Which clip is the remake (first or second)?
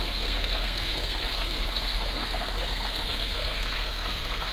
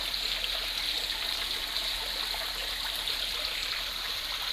first